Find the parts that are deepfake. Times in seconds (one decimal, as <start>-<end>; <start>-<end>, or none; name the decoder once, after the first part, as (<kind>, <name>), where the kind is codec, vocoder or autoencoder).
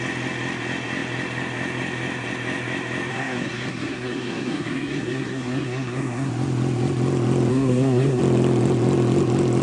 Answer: 3.1-6.3 (codec, SNAC); 7.5-8.2